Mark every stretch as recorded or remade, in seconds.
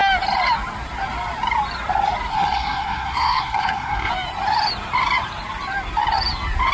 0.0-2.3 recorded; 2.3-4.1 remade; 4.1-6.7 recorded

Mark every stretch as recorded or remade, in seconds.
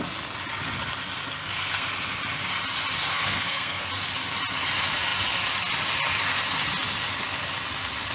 0.0-1.4 recorded; 1.4-1.9 remade; 1.9-3.1 recorded; 3.1-3.9 remade; 3.9-8.1 recorded